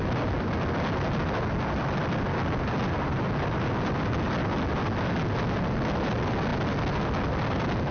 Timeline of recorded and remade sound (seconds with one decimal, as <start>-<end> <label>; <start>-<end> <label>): 0.0-7.9 recorded